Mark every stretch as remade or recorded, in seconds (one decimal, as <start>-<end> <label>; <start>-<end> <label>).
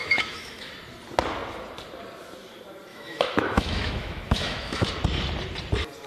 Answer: 0.0-0.7 remade; 0.7-2.9 recorded; 2.9-4.9 remade; 4.9-6.1 recorded